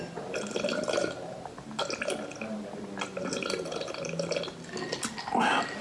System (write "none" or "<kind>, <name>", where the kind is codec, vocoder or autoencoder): none